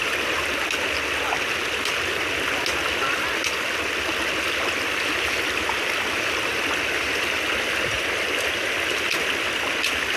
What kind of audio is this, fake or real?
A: real